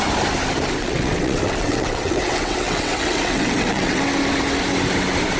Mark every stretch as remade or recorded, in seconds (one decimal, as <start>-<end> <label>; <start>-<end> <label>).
0.0-0.8 recorded; 0.8-4.0 remade; 4.0-5.4 recorded